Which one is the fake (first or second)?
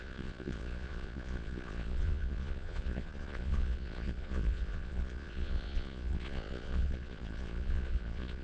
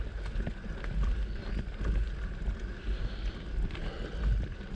first